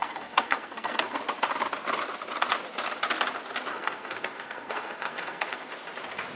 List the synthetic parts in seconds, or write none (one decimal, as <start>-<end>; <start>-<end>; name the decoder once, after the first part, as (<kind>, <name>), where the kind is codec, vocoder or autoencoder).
0.0-1.2 (codec, SNAC); 3.7-5.7